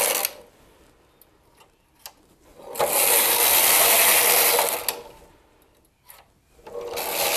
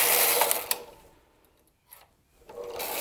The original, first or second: first